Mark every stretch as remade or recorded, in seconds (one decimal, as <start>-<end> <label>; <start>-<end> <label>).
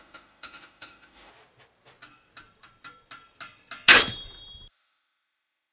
0.0-1.3 remade; 1.3-4.7 recorded; 4.7-5.7 remade